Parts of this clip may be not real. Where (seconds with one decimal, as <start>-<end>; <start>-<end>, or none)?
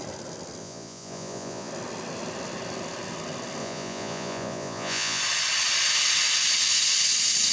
0.6-1.7; 3.6-5.2